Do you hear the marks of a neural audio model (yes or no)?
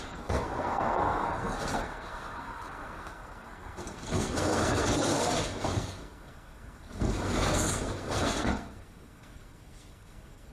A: yes